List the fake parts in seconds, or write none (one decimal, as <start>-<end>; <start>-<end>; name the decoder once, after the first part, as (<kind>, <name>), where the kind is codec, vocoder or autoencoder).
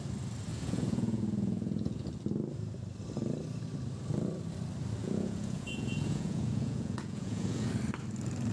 0.5-2.1 (vocoder, Vocos); 5.0-7.7